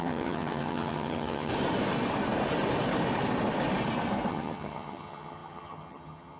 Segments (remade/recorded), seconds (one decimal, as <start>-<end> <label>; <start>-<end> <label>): 0.0-1.5 remade; 1.5-4.3 recorded; 4.3-6.4 remade